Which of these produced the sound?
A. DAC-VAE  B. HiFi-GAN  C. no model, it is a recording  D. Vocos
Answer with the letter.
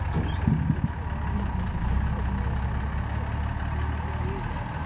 C